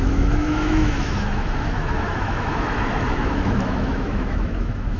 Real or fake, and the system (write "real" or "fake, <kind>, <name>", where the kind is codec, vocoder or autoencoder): fake, autoencoder, DAC-VAE